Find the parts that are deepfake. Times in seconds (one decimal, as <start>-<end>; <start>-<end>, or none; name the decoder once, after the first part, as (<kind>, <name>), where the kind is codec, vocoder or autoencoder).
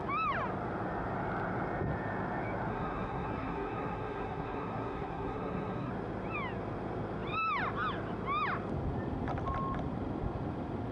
2.7-5.9 (codec, SNAC)